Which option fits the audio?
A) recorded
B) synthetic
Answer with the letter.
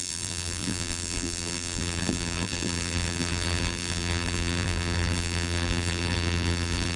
B